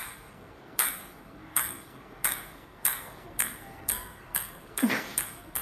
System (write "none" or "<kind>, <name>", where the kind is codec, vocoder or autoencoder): codec, SNAC